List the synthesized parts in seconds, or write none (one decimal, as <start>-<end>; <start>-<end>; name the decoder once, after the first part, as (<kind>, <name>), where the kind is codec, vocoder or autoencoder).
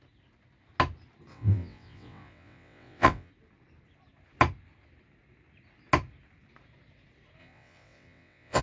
1.3-3.3 (vocoder, WaveNeXt); 7.4-8.6